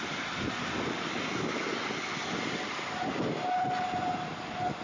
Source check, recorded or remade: recorded